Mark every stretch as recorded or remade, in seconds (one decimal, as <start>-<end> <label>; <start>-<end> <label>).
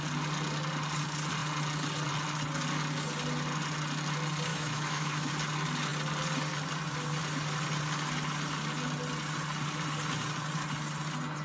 0.0-4.5 recorded; 4.5-5.3 remade; 5.3-11.4 recorded